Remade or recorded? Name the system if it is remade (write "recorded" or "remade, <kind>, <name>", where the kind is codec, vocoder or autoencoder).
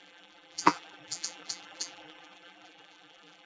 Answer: remade, vocoder, BigVGAN v2